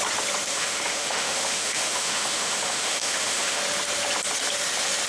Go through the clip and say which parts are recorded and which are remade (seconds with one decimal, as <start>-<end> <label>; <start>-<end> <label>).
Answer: 0.0-0.5 recorded; 0.5-3.6 remade; 3.6-5.1 recorded